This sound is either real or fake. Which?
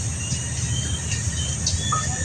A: real